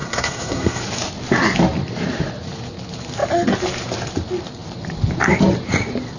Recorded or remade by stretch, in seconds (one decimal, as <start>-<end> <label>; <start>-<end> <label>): 0.0-0.8 remade; 0.8-6.2 recorded